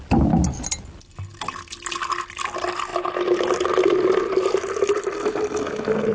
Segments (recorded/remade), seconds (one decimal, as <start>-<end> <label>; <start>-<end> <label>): 0.0-6.1 recorded